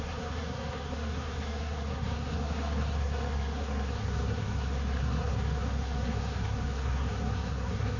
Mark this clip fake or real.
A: fake